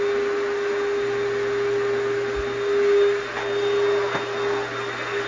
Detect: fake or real real